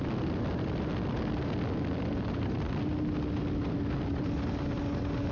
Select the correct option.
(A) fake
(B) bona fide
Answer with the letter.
B